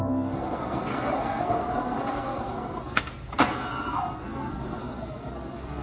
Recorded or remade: remade